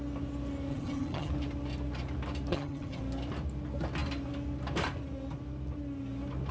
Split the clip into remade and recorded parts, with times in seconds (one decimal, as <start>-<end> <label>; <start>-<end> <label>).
0.0-0.7 recorded; 0.7-1.3 remade; 1.3-2.5 recorded; 2.5-3.0 remade; 3.0-6.5 recorded